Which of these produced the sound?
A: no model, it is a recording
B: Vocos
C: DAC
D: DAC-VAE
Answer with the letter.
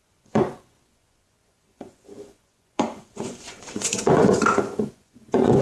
B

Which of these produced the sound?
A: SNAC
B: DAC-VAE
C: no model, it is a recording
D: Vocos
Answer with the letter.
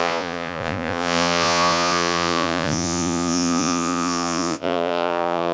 D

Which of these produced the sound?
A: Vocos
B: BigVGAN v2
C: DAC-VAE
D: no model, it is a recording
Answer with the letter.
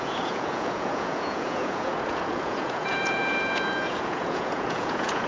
A